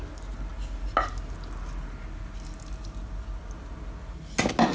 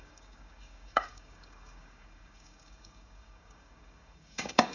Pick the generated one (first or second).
second